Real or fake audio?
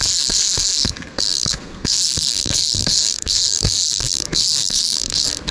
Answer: fake